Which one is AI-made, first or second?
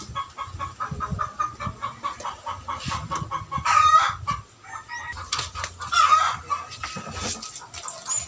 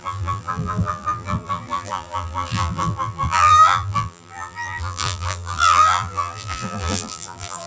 second